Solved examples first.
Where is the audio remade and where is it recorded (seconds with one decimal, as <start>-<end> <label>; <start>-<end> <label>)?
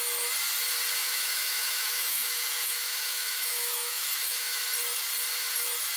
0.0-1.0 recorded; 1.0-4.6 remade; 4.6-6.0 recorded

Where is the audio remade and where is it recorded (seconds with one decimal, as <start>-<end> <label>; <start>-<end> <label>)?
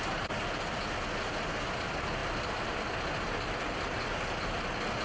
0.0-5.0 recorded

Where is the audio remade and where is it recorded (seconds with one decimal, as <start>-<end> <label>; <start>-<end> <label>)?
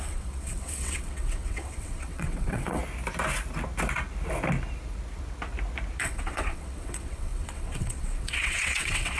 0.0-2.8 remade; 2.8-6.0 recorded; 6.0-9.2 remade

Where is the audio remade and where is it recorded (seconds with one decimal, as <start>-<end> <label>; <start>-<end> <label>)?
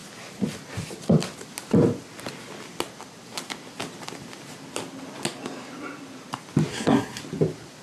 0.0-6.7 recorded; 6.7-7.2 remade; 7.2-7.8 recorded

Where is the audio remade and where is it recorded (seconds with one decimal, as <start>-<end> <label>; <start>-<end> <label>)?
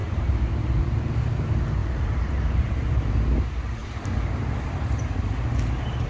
0.0-0.8 remade; 0.8-1.8 recorded; 1.8-3.1 remade; 3.1-3.8 recorded; 3.8-5.3 remade; 5.3-6.1 recorded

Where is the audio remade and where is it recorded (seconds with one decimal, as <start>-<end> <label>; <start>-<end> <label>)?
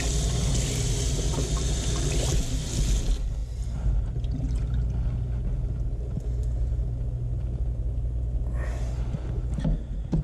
0.0-10.2 recorded